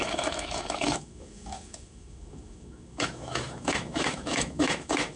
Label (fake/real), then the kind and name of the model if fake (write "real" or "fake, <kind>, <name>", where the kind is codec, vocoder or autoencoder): fake, autoencoder, DAC-VAE